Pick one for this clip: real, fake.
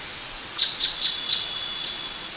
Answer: fake